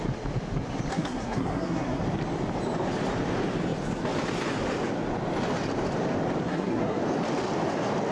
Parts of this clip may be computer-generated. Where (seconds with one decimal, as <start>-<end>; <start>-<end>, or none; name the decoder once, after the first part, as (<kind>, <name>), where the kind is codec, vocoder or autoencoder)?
0.9-2.0 (codec, SNAC); 6.4-7.0